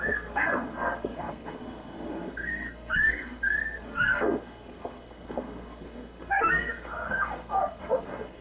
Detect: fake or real fake